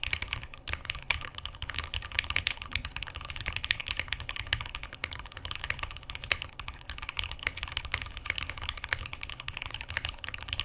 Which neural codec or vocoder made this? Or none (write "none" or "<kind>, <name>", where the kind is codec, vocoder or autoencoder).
codec, HILCodec